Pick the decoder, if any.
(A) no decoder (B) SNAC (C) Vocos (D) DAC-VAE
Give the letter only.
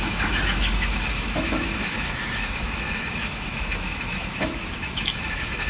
D